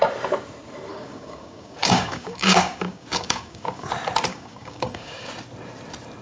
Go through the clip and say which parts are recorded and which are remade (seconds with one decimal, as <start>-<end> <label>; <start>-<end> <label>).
0.0-0.9 recorded; 0.9-3.9 remade; 3.9-4.3 recorded; 4.3-5.3 remade; 5.3-6.2 recorded